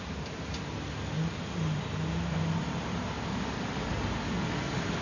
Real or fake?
real